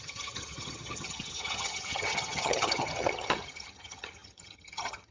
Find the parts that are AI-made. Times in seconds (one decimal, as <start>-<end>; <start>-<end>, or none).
0.0-5.1